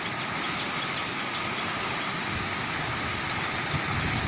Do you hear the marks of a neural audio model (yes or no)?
no